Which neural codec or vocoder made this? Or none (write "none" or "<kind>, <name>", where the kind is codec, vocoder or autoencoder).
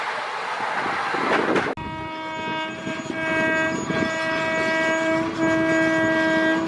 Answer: none